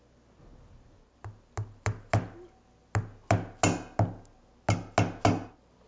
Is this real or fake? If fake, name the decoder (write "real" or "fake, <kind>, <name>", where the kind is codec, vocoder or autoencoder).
real